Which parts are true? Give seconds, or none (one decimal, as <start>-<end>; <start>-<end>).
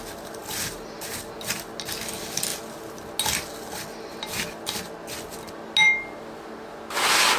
0.0-0.4; 1.3-7.4